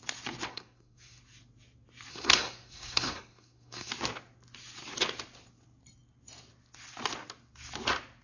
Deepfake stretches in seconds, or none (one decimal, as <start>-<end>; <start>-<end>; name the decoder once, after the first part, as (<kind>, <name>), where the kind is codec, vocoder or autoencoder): 0.5-1.2 (codec, SNAC); 2.1-3.9